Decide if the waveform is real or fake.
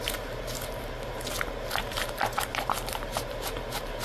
fake